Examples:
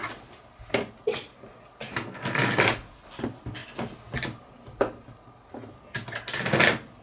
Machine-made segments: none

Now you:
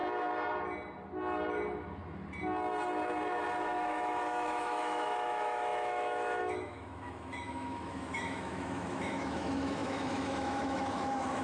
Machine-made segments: 3.6-11.4 (autoencoder, DAC-VAE)

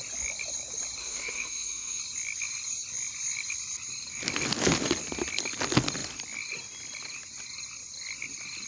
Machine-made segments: 1.0-2.0 (autoencoder, DAC-VAE)

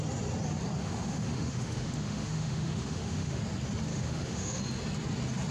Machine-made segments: 0.8-3.4 (autoencoder, DAC-VAE); 3.9-4.6